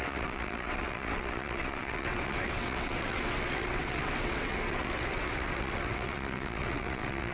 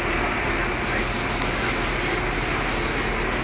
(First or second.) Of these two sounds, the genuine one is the second